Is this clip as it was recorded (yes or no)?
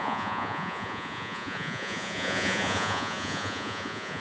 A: no